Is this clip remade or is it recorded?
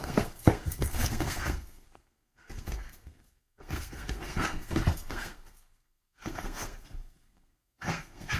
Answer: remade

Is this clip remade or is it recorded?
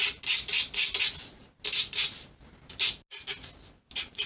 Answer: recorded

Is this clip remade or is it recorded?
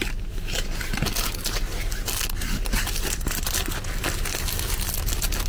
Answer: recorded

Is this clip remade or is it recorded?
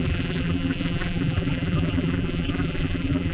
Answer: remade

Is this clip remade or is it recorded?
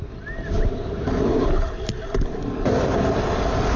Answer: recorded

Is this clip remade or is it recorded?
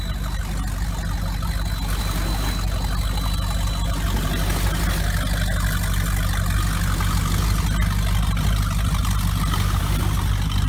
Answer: recorded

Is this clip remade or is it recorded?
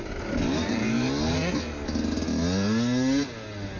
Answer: recorded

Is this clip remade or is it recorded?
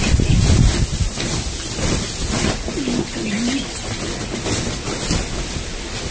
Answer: recorded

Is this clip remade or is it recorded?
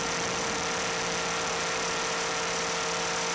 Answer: recorded